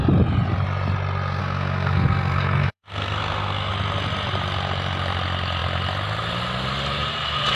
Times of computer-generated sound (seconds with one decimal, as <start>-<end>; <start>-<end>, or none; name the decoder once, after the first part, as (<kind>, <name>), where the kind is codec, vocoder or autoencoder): 1.4-3.7 (codec, SNAC)